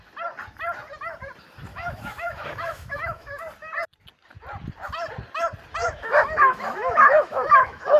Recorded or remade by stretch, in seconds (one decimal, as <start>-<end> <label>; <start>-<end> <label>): 0.0-1.7 recorded; 1.7-3.4 remade; 3.4-5.8 recorded; 5.8-8.0 remade